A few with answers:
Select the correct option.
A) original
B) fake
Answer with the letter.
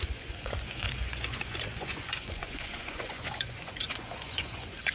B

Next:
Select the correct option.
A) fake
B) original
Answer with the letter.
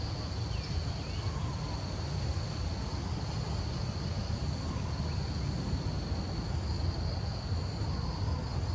B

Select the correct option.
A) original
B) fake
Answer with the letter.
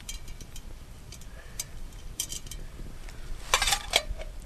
B